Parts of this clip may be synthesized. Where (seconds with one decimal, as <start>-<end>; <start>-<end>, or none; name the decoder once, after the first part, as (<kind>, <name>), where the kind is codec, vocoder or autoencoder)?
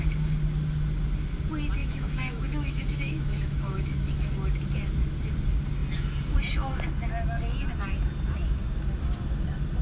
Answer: 1.8-4.3 (autoencoder, DAC-VAE)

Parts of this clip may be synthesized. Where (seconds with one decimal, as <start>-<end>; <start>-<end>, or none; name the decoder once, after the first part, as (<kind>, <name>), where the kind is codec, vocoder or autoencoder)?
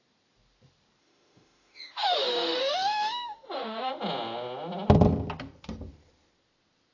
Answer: 1.0-3.9 (autoencoder, DAC-VAE)